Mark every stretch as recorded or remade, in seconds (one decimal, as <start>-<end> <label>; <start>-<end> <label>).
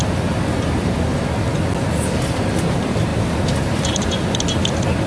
0.0-5.1 recorded